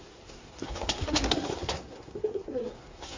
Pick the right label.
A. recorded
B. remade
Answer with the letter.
B